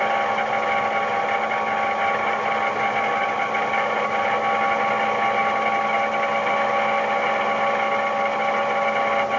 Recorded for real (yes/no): yes